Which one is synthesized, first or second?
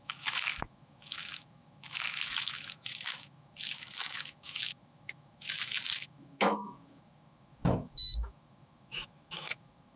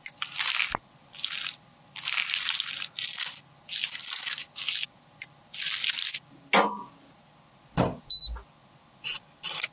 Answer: first